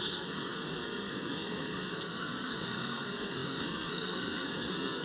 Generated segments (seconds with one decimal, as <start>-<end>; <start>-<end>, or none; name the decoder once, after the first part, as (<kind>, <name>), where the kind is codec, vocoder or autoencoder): 0.0-5.0 (codec, SNAC)